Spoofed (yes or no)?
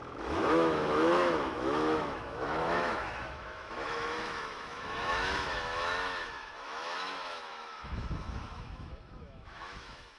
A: yes